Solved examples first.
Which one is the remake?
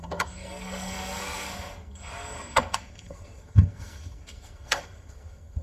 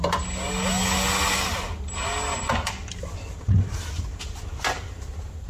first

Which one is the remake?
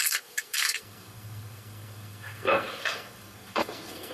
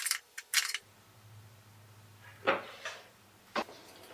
first